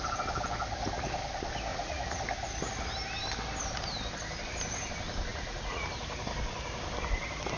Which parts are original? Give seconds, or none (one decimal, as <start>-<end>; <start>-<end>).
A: 0.0-1.7; 2.2-5.3; 5.9-7.6